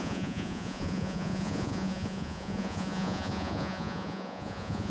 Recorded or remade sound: remade